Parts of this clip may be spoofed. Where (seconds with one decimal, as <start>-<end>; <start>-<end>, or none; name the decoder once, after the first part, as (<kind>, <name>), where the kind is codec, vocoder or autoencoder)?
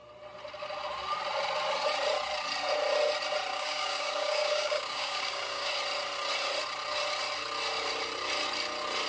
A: 3.5-5.7 (codec, DAC)